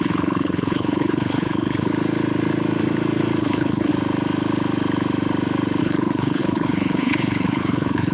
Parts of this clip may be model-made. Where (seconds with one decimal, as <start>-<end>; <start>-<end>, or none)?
0.0-1.9; 3.4-3.9; 5.8-8.1